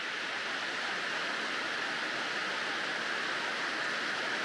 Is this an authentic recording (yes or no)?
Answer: yes